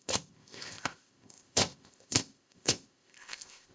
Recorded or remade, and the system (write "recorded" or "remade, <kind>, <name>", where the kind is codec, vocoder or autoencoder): remade, codec, ZipCodec